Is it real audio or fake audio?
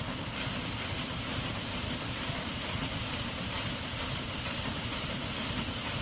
fake